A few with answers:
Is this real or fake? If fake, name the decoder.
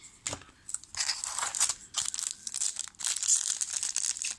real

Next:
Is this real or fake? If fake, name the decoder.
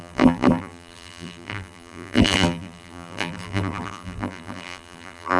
fake, vocoder, BigVGAN v2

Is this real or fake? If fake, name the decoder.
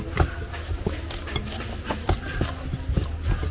real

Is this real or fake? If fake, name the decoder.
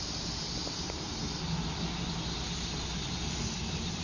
real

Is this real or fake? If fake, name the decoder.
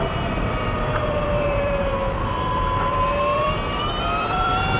fake, vocoder, BigVGAN v2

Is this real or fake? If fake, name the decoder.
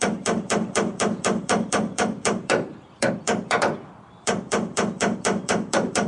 fake, vocoder, BigVGAN v2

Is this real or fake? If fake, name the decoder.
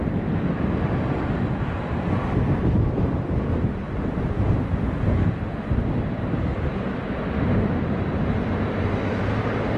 real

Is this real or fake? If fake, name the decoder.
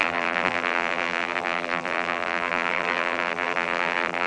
fake, vocoder, BigVGAN v2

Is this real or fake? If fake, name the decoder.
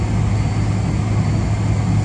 real